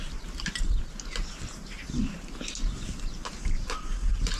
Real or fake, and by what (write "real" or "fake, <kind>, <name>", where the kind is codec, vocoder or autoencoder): real